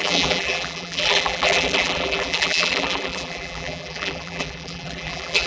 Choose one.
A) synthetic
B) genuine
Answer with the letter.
A